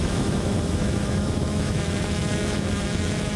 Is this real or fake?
fake